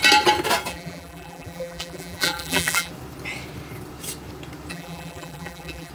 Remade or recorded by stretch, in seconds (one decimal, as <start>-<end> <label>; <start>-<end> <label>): 0.0-0.7 recorded; 0.7-2.9 remade; 2.9-4.7 recorded; 4.7-5.9 remade